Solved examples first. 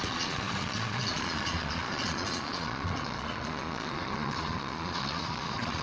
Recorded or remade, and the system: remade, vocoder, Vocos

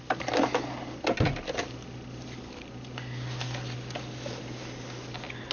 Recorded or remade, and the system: recorded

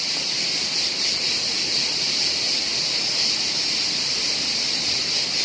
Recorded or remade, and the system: recorded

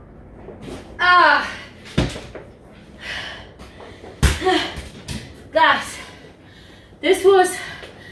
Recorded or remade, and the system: recorded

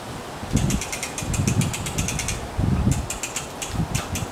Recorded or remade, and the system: recorded